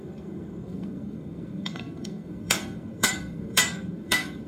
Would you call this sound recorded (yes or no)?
no